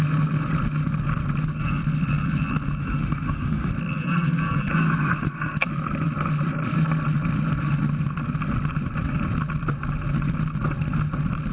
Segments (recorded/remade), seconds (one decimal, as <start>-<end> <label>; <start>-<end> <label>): 0.0-2.8 recorded; 2.8-3.7 remade; 3.7-11.5 recorded